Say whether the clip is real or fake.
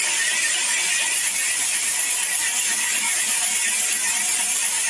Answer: real